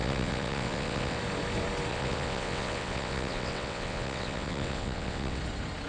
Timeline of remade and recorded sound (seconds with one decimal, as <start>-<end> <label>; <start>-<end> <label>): 0.0-1.2 remade; 1.2-1.9 recorded; 1.9-5.4 remade; 5.4-5.9 recorded